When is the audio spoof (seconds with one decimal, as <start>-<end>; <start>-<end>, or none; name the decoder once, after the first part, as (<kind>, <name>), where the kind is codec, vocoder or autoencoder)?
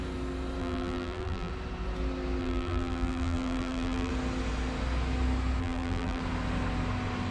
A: 0.6-1.5 (vocoder, BigVGAN v2); 2.4-4.1; 5.6-6.2